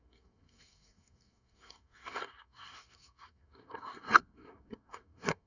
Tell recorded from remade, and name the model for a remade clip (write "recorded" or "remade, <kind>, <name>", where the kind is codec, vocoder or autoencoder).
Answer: remade, codec, SNAC